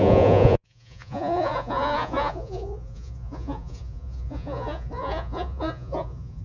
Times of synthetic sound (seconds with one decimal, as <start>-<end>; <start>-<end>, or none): 0.0-6.4